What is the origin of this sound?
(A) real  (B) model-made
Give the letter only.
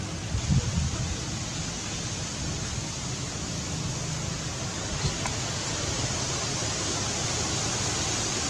A